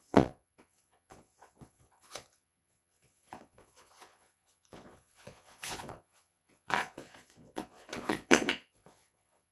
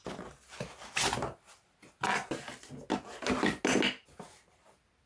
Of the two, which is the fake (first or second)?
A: first